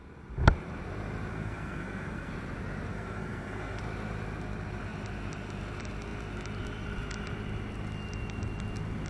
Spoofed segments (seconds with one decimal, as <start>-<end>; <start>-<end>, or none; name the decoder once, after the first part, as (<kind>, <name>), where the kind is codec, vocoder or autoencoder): 1.3-2.3 (codec, SNAC); 2.9-3.8